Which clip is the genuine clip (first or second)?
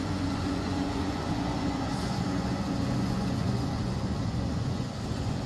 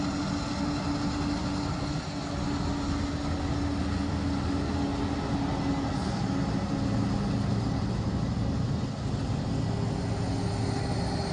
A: second